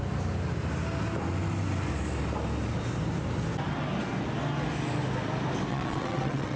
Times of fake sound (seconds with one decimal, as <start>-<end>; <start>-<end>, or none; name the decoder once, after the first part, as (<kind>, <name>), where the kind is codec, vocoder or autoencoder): 5.7-6.6 (vocoder, WaveNeXt)